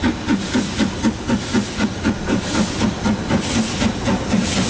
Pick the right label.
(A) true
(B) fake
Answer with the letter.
A